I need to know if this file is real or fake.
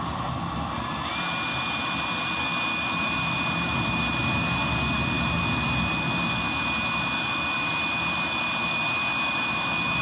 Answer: real